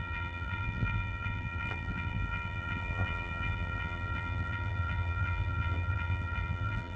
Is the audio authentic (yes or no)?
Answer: no